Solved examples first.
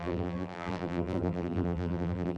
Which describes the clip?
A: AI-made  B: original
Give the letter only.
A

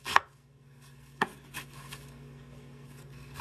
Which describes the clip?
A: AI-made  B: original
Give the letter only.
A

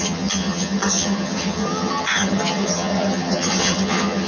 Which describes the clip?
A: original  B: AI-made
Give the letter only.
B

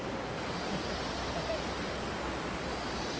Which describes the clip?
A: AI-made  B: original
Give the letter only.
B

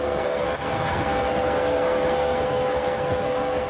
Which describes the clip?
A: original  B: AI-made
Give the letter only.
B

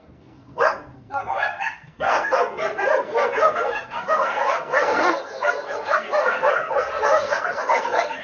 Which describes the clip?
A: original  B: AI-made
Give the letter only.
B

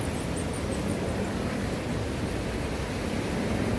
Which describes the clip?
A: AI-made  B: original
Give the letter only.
B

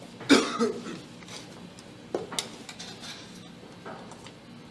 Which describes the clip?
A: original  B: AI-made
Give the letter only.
A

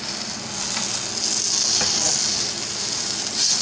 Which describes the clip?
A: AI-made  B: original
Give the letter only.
B